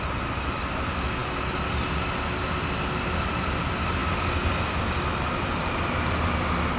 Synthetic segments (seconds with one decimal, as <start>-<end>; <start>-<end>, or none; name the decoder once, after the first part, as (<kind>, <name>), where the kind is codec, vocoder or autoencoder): none